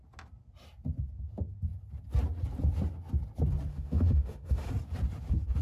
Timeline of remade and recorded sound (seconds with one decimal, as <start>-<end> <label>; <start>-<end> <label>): 0.0-3.7 recorded; 3.7-4.7 remade; 4.7-5.6 recorded